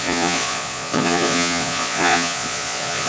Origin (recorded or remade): remade